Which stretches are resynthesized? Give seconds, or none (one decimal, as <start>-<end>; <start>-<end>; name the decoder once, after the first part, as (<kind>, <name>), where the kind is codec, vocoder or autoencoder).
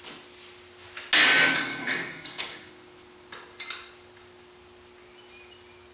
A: 1.7-2.7 (codec, DAC)